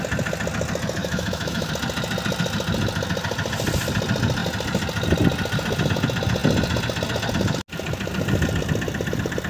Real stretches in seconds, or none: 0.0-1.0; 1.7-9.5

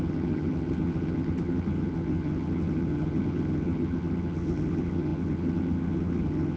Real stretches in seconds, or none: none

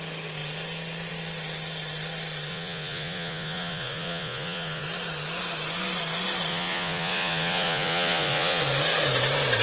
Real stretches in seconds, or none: 0.0-2.5; 4.8-6.5; 8.6-9.6

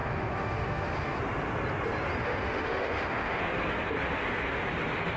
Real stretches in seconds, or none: 1.2-2.2; 3.4-5.2

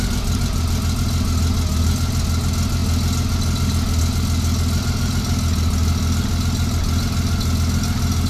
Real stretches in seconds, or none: 0.0-8.3

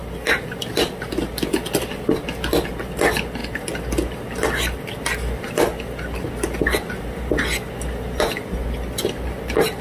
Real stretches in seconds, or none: 0.0-9.8